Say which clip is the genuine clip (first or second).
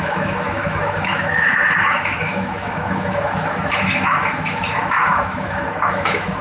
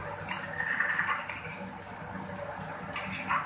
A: second